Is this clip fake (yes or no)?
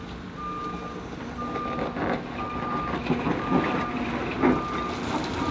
no